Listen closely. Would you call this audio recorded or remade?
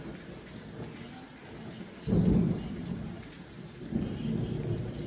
recorded